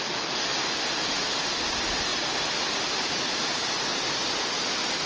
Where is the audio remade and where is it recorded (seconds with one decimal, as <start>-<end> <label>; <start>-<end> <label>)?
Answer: 0.0-5.1 recorded